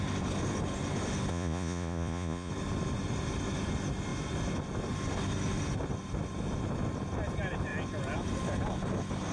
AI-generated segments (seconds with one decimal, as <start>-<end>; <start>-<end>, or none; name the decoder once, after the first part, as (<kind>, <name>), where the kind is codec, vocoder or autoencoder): 1.3-2.5 (vocoder, Vocos)